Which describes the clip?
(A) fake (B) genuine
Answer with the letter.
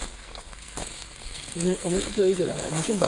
A